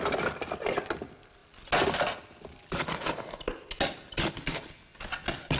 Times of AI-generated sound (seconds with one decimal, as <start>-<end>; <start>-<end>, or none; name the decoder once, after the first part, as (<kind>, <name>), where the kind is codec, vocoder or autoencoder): none